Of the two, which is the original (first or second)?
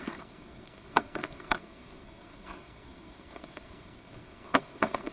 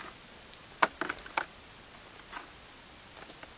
second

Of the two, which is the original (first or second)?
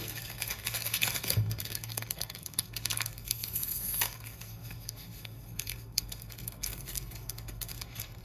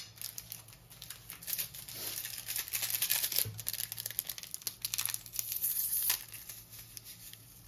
second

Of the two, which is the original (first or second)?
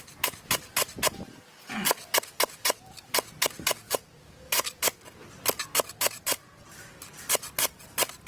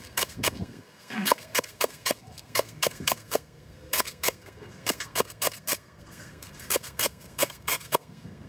first